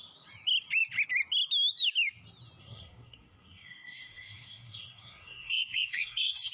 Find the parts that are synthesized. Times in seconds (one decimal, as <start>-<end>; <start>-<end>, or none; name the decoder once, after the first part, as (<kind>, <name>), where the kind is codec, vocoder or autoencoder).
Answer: 2.6-6.5 (codec, SNAC)